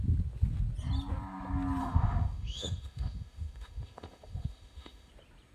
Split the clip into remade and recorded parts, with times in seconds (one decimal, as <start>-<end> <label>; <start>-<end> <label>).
0.0-1.8 recorded; 1.8-5.1 remade; 5.1-5.5 recorded